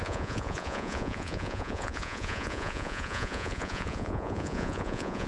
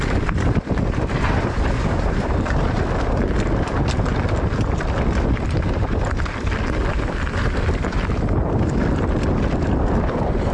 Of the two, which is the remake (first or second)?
first